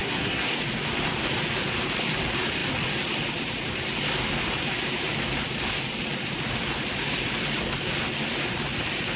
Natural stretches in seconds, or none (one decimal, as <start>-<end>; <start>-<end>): 0.6-9.2